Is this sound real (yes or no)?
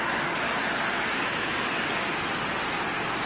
yes